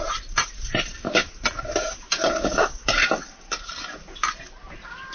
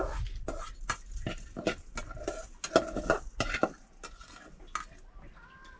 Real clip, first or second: second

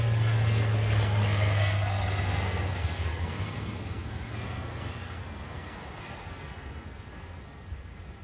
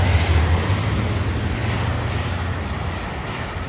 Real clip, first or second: second